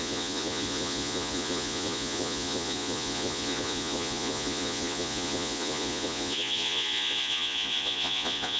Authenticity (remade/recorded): remade